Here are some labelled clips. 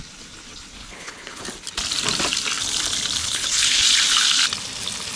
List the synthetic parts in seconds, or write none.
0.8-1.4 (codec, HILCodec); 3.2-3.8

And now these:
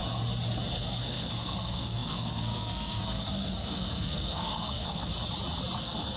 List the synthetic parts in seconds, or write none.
0.7-5.1 (codec, SNAC); 5.8-6.2

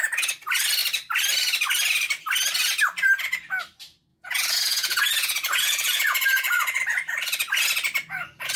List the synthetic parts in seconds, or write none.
4.1-6.8 (vocoder, Vocos)

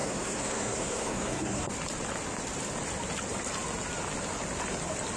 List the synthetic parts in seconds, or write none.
0.0-1.7 (codec, SNAC)

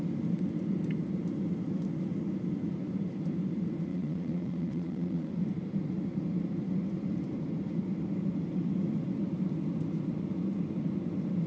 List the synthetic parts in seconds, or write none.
3.9-5.3 (vocoder, Vocos)

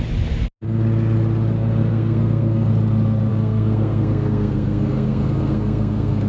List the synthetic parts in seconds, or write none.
1.8-2.7 (codec, SNAC); 3.3-6.3

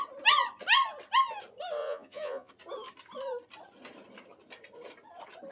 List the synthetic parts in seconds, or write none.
1.8-2.5 (vocoder, Vocos)